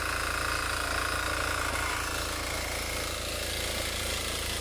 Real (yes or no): yes